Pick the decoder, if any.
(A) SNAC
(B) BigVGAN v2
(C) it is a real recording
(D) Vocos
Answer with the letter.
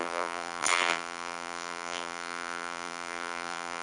B